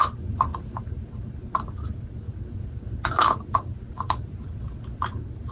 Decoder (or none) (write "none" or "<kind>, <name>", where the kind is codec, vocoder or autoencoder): none